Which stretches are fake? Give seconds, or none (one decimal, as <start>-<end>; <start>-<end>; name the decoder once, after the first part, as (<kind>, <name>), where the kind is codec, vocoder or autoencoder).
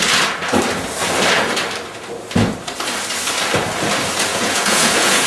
4.3-5.3 (vocoder, Vocos)